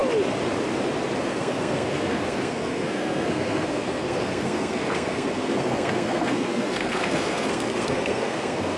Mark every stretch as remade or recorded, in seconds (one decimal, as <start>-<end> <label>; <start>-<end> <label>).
0.0-1.2 recorded; 1.2-8.8 remade

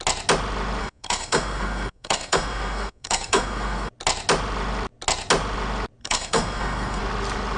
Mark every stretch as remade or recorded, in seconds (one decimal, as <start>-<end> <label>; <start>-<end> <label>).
0.0-0.8 recorded; 0.8-3.9 remade; 3.9-6.0 recorded; 6.0-7.0 remade; 7.0-7.6 recorded